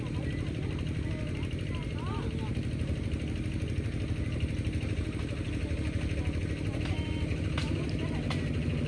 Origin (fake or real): real